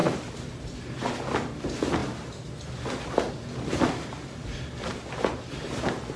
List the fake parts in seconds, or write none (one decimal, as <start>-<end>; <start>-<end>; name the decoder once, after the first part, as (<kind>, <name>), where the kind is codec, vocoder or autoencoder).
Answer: 0.0-0.9 (vocoder, BigVGAN v2)